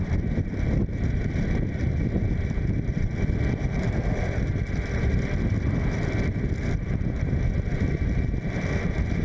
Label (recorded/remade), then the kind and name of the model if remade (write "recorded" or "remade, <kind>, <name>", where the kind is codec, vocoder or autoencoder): remade, vocoder, BigVGAN v2